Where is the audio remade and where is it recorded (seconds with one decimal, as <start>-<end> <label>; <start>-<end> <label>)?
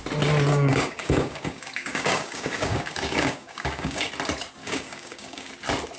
0.0-0.5 recorded; 0.5-4.1 remade; 4.1-4.6 recorded; 4.6-5.5 remade; 5.5-6.0 recorded